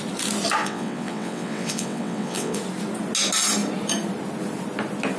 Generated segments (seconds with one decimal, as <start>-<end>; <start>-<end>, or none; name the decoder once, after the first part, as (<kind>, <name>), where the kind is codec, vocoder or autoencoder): 0.6-2.6 (vocoder, WaveNeXt)